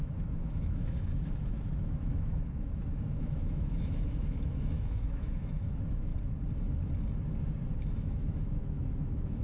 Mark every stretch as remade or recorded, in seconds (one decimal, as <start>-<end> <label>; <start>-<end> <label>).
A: 0.0-6.1 remade; 6.1-7.9 recorded; 7.9-9.4 remade